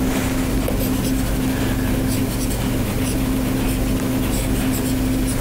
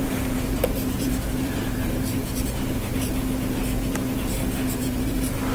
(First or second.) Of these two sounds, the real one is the first